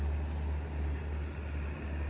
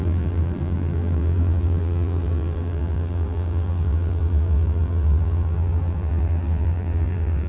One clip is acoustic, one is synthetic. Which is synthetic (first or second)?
second